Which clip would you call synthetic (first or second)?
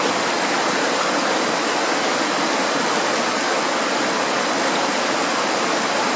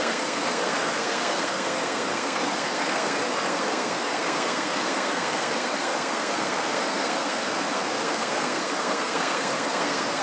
second